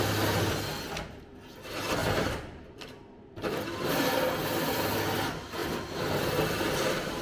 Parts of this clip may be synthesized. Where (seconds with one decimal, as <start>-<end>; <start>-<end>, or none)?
2.0-4.8; 5.6-6.7